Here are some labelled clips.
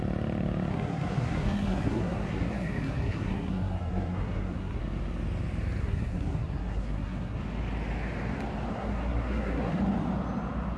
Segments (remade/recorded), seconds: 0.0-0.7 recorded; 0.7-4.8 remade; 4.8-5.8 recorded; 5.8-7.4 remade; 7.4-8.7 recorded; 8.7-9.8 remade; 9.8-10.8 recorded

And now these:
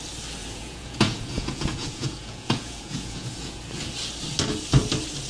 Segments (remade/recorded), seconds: 0.0-0.4 recorded; 0.4-3.6 remade; 3.6-5.3 recorded